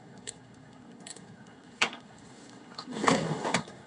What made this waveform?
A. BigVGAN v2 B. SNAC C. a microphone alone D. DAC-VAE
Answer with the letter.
B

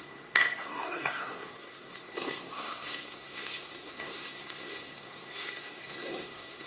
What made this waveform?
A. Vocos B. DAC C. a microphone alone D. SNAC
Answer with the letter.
D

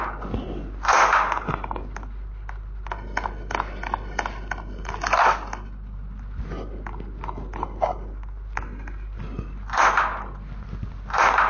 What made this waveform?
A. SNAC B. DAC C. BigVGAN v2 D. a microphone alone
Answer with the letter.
D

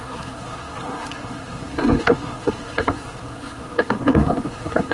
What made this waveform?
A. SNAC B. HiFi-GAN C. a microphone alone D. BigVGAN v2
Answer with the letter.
A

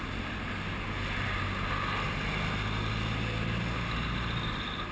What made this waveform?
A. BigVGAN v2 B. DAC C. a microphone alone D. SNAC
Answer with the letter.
C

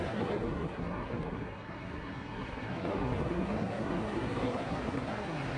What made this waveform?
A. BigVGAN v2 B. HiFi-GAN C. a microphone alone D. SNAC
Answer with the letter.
D